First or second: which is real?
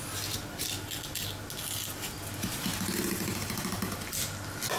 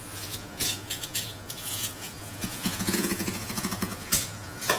first